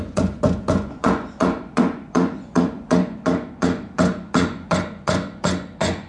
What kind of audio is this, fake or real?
fake